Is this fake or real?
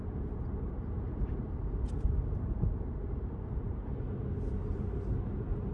real